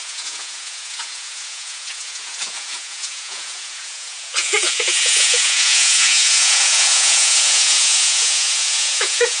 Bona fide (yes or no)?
no